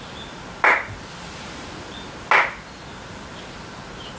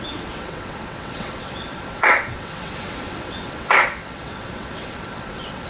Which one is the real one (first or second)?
first